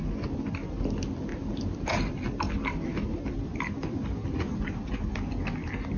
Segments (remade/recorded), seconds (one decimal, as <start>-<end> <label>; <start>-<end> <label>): 0.0-1.3 recorded; 1.3-4.9 remade; 4.9-6.0 recorded